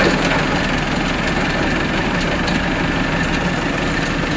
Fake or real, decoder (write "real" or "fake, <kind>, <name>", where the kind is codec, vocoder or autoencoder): real